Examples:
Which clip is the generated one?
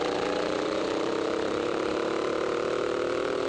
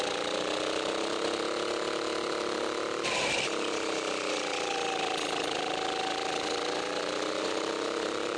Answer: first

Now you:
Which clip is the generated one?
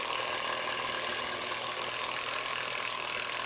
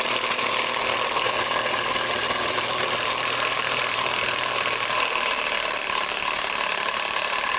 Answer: second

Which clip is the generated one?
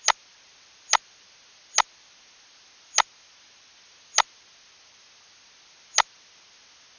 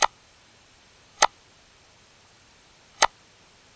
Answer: second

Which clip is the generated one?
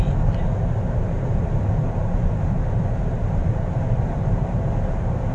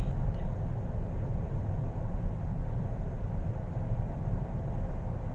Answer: first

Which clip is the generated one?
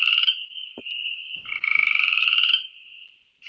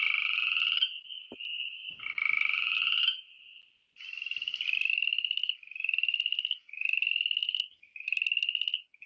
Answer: first